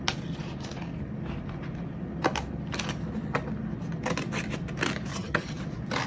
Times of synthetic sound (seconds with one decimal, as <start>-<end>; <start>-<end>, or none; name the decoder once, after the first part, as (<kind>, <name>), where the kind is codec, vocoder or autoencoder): 5.1-5.6 (vocoder, HiFi-GAN)